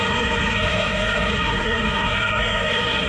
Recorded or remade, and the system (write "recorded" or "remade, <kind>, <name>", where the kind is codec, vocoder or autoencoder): remade, codec, SNAC